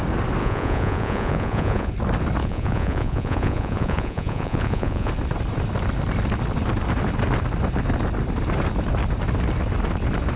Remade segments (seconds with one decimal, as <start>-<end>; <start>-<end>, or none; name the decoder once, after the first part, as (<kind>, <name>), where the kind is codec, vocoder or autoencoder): 0.4-1.9 (vocoder, Vocos); 2.4-5.1